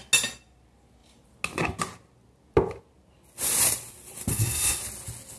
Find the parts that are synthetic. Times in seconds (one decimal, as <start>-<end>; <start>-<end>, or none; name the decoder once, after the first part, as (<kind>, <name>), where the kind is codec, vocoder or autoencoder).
4.3-4.8 (codec, SNAC)